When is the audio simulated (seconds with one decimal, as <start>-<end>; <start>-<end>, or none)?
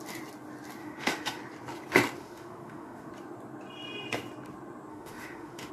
0.8-1.4; 2.2-3.1; 4.9-5.7